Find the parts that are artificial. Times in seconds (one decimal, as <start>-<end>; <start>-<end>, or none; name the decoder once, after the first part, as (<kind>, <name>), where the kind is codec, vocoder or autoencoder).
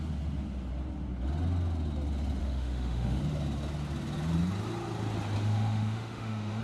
2.4-3.2 (autoencoder, DAC-VAE); 5.4-6.6